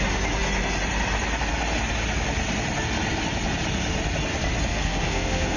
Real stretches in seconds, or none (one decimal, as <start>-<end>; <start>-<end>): 0.0-4.7